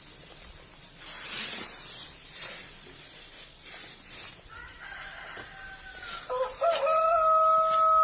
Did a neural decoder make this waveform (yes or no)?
no